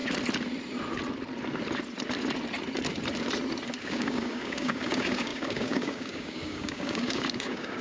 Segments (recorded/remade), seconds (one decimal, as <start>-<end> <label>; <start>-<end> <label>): 0.0-3.8 recorded; 3.8-7.8 remade

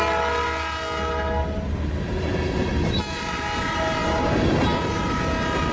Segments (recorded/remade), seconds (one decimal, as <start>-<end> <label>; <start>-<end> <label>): 0.0-5.7 recorded